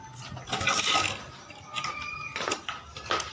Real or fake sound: real